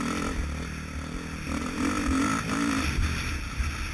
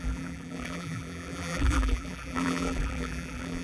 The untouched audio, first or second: first